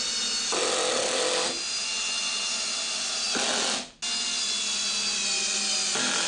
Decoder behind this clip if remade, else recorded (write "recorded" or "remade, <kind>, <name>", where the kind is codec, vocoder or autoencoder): recorded